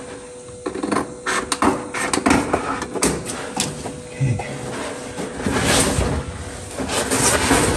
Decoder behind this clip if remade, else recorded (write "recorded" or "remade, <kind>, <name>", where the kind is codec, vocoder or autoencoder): recorded